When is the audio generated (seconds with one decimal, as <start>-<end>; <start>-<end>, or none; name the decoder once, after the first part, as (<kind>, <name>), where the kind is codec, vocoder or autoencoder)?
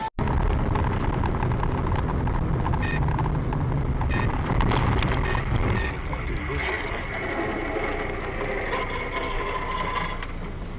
5.6-7.0 (codec, DAC)